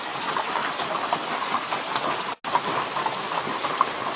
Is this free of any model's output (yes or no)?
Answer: yes